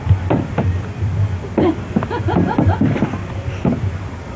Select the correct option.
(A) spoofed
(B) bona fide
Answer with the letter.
B